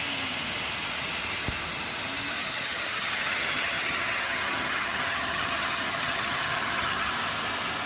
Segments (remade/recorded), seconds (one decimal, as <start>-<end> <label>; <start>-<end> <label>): 0.0-2.4 recorded; 2.4-7.1 remade; 7.1-7.9 recorded